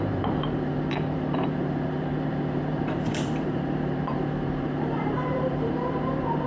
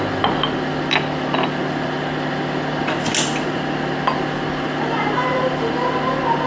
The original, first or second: second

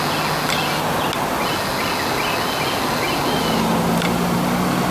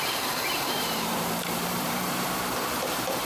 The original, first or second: first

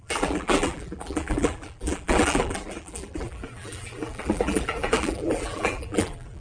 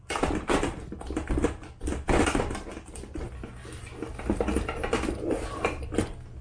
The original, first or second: second